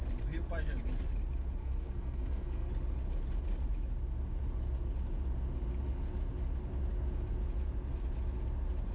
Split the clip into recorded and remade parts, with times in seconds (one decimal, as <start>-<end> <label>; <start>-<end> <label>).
0.0-1.6 recorded; 1.6-2.7 remade; 2.7-8.9 recorded